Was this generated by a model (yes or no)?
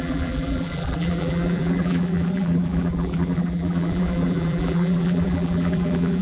yes